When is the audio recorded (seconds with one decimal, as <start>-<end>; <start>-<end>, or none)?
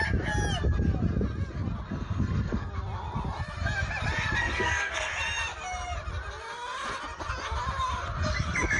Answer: 0.0-1.9; 2.7-4.4; 5.1-8.8